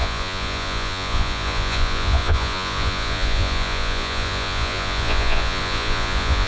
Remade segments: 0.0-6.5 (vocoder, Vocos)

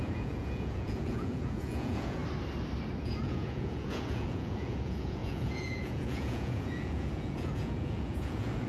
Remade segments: 0.0-2.2 (vocoder, Vocos); 3.0-8.7

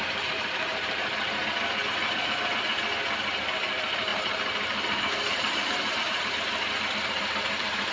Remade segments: 0.0-1.4 (vocoder, BigVGAN v2); 3.2-7.9

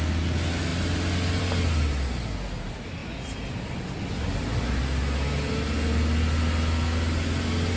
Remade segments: none

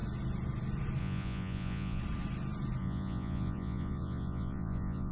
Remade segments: 1.0-2.0 (vocoder, Vocos); 2.8-5.1

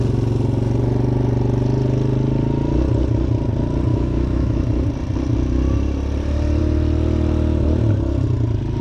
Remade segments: 3.9-4.6 (autoencoder, DAC-VAE)